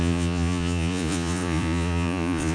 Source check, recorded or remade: remade